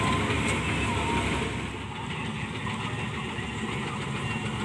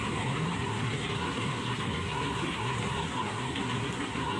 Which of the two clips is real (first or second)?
first